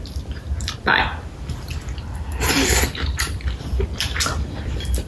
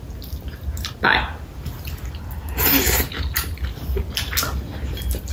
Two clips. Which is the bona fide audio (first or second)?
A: second